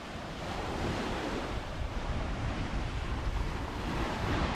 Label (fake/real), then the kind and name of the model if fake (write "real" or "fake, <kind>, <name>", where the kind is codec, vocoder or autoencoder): fake, vocoder, BigVGAN v2